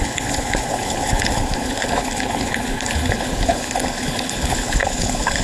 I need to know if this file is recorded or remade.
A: remade